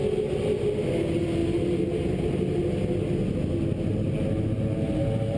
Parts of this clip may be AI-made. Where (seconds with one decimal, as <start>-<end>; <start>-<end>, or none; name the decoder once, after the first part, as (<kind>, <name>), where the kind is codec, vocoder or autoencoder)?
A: none